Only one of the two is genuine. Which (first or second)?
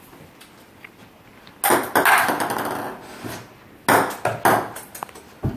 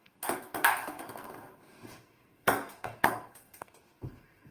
first